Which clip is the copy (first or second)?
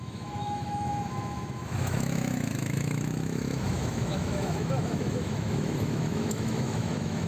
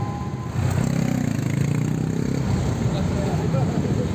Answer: first